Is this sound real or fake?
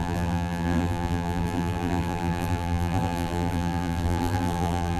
fake